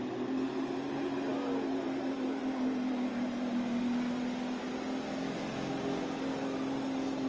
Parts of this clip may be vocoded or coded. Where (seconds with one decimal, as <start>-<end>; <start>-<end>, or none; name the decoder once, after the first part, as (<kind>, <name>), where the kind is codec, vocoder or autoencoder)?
none